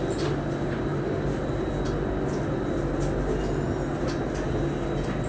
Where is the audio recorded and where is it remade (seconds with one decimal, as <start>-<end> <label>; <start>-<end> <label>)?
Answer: 0.0-5.3 recorded